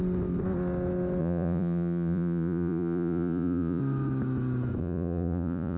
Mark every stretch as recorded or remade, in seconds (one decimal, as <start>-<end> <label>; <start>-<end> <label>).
0.0-1.2 recorded; 1.2-3.8 remade; 3.8-4.8 recorded; 4.8-5.8 remade